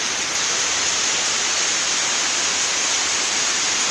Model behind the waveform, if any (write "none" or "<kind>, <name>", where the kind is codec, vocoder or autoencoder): none